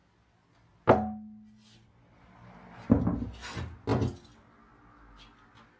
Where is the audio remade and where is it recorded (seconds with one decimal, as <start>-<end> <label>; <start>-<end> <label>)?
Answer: 0.0-5.8 recorded